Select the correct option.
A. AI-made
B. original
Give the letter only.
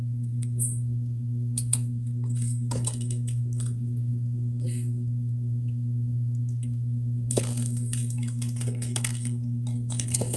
A